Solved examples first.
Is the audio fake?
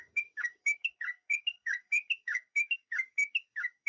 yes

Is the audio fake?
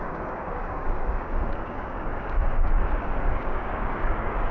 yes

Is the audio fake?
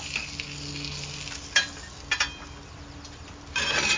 no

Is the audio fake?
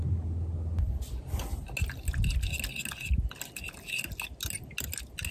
no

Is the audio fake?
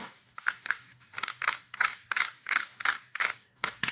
yes